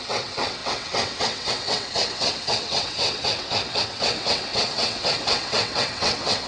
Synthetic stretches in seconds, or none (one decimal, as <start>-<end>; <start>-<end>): 0.0-6.5